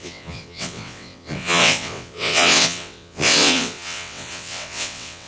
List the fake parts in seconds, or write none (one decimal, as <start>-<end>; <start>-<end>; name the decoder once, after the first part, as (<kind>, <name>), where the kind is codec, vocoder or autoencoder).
0.0-5.3 (vocoder, WaveNeXt)